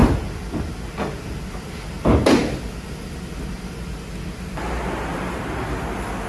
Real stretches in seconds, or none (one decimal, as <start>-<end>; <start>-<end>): 0.0-6.3